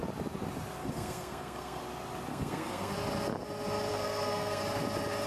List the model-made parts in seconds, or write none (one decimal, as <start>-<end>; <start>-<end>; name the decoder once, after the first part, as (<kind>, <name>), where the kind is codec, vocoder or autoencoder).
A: 0.8-1.8 (codec, SNAC); 2.3-2.9; 3.9-4.6